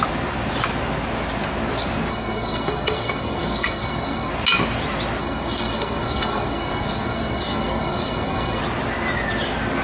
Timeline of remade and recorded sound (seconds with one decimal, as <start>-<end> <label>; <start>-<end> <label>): 0.0-2.1 recorded; 2.1-4.3 remade; 4.3-5.2 recorded; 5.2-8.6 remade; 8.6-9.8 recorded

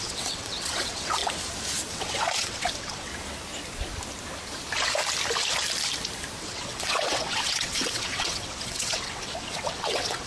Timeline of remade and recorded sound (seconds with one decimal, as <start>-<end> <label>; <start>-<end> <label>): 0.0-1.2 remade; 1.2-1.9 recorded; 1.9-3.1 remade; 3.1-6.4 recorded; 6.4-10.3 remade

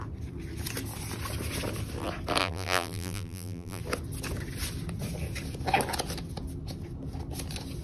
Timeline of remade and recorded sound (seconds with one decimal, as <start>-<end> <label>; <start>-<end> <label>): 0.0-2.4 recorded; 2.4-3.8 remade; 3.8-7.8 recorded

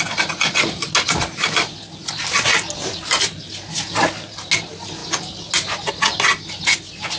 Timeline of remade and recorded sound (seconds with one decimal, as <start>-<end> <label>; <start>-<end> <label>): 0.0-7.2 recorded

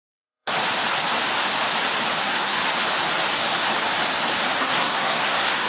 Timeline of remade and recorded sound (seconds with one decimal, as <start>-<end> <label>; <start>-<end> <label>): 0.0-0.5 remade; 0.5-2.2 recorded; 2.2-2.6 remade; 2.6-4.6 recorded; 4.6-5.7 remade